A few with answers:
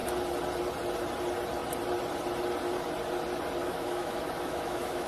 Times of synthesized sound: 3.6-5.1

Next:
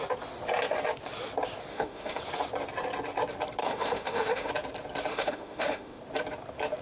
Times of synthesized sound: 1.7-2.2; 3.6-4.5; 5.1-6.0

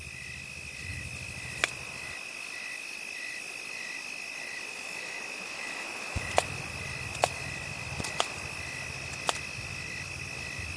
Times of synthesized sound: 4.7-6.2